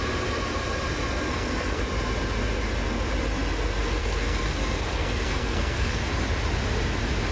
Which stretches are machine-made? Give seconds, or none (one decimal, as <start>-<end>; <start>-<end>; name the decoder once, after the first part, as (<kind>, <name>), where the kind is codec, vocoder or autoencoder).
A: 1.3-1.8 (codec, SNAC); 4.0-6.0